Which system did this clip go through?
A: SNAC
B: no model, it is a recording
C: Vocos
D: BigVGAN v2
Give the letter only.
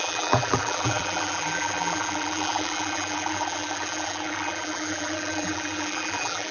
D